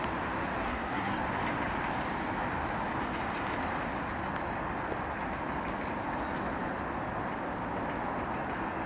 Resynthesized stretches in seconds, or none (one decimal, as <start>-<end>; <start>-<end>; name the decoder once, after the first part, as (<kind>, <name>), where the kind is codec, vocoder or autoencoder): 0.6-1.2 (codec, SNAC)